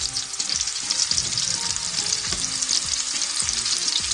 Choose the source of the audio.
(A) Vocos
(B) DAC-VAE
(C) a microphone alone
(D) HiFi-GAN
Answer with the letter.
C